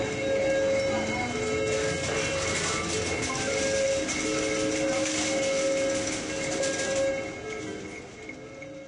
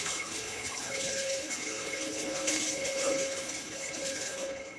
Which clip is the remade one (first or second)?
second